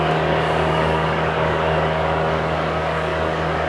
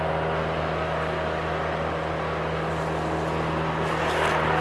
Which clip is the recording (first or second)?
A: second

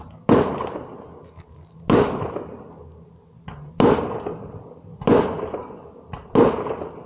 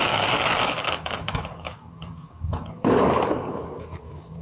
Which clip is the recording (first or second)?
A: first